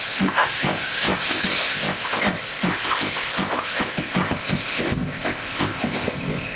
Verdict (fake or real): fake